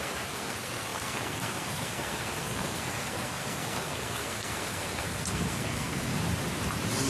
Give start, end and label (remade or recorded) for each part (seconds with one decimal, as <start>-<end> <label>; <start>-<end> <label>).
0.0-6.1 remade; 6.1-7.1 recorded